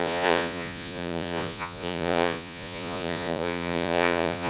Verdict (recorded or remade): remade